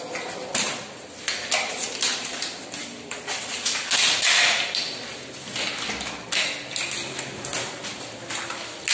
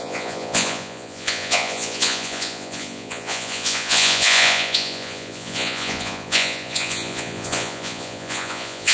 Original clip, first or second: first